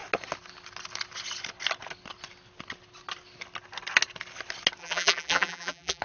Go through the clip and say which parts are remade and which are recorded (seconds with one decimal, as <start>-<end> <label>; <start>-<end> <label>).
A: 0.0-4.8 recorded; 4.8-6.0 remade

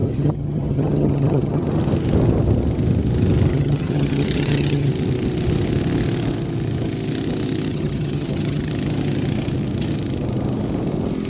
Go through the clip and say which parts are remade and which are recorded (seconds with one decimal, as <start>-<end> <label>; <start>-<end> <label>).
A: 0.0-1.7 remade; 1.7-3.5 recorded; 3.5-4.9 remade; 4.9-7.7 recorded; 7.7-8.7 remade; 8.7-11.3 recorded